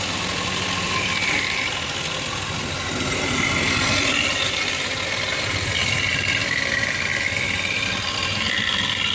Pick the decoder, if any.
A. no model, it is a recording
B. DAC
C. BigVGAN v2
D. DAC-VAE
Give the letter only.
A